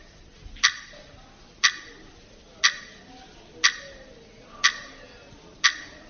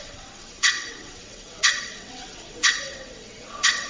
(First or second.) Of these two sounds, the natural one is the first